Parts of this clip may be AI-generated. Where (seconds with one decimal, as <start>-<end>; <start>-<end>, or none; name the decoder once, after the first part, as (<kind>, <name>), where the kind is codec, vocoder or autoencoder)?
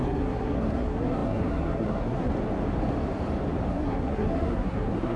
0.0-2.3 (codec, SNAC); 3.7-5.2